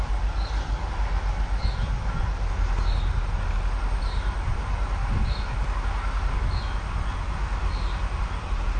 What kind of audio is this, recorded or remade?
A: recorded